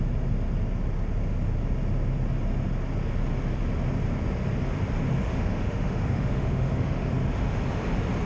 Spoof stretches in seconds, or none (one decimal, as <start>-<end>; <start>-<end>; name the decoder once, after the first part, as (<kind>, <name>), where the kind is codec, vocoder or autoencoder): 5.2-7.1 (autoencoder, DAC-VAE)